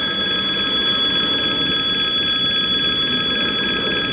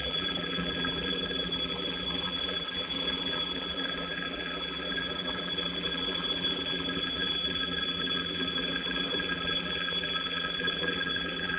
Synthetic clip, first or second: second